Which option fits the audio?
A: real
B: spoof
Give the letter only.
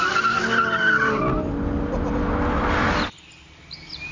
A